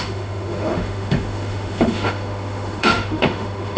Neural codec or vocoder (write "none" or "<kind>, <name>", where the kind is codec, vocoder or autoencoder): autoencoder, DAC-VAE